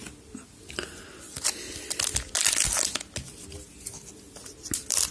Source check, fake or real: real